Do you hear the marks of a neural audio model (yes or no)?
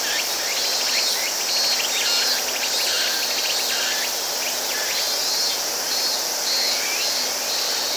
no